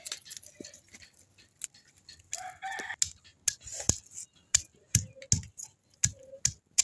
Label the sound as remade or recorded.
recorded